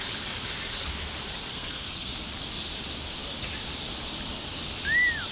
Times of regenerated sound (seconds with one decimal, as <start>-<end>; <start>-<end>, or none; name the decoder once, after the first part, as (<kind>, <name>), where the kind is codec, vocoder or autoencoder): 1.5-2.1 (codec, SNAC)